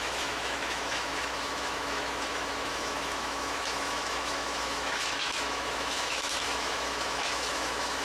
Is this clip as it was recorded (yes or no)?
no